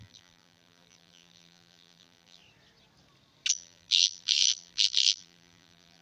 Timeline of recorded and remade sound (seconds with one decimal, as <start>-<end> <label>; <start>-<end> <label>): 0.0-2.4 remade; 2.4-3.5 recorded; 3.5-6.0 remade